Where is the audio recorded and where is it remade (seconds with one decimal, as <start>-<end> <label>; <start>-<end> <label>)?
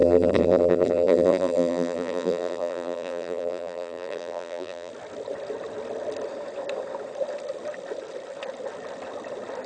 0.0-4.9 remade; 4.9-9.7 recorded